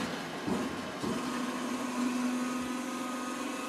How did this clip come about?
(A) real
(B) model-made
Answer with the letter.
A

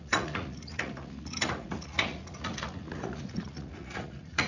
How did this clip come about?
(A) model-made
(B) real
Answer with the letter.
A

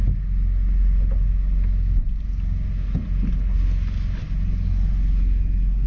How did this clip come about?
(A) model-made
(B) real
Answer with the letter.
B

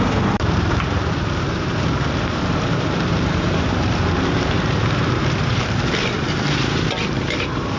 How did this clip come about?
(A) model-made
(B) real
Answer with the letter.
A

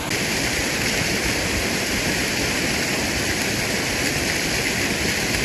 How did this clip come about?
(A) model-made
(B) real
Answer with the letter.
B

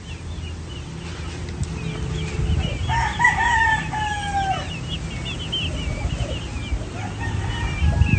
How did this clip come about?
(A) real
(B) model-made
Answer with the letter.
A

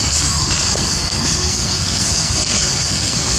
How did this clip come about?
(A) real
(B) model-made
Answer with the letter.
B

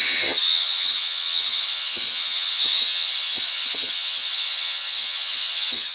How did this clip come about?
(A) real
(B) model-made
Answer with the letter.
B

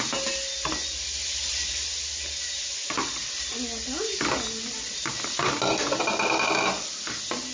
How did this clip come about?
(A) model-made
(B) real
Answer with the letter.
B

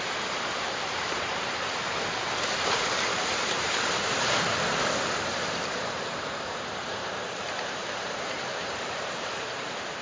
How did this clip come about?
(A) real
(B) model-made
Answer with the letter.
B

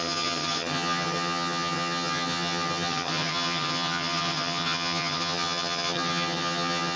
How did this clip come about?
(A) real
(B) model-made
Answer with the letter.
B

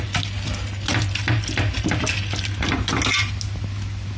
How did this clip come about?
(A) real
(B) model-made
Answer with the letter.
A